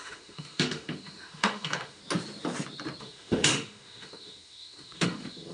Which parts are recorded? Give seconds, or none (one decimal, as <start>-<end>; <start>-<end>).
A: 2.0-3.0